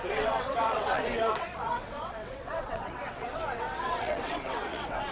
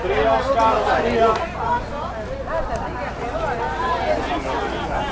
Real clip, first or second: second